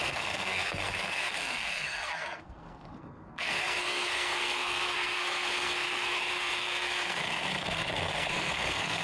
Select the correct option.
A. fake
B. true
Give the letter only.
A